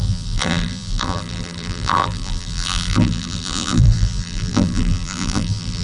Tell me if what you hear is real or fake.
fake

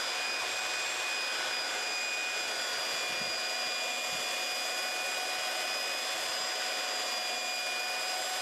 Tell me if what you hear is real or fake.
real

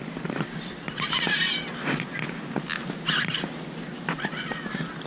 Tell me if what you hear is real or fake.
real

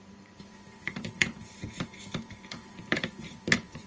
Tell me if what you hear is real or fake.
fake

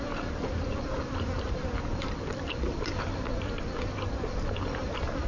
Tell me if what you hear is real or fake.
fake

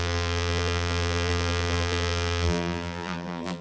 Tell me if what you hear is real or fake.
fake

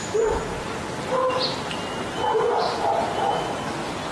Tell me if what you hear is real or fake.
real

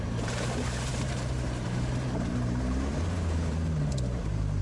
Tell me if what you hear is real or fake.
fake